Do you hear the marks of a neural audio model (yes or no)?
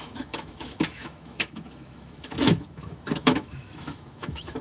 yes